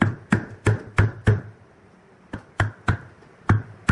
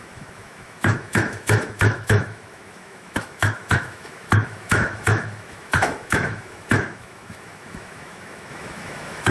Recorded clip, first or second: first